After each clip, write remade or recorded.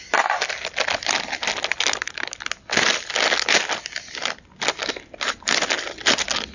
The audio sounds recorded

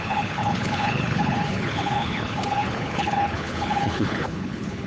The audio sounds remade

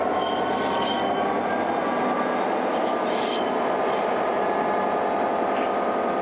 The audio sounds recorded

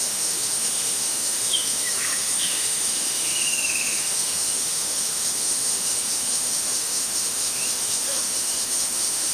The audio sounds remade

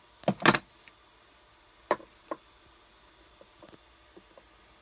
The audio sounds recorded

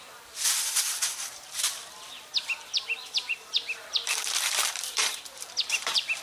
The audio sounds remade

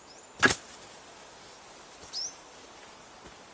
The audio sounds recorded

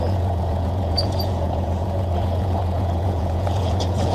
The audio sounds remade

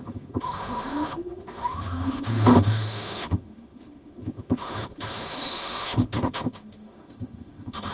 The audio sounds remade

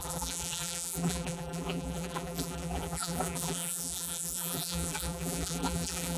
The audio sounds remade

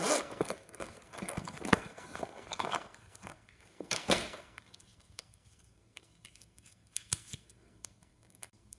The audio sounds remade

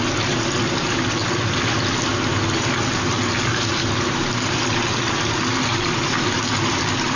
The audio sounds recorded